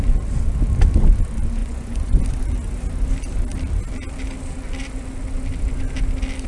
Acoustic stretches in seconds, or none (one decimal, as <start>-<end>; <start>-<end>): 0.0-1.6; 2.2-6.5